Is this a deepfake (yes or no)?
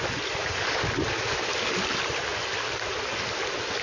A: no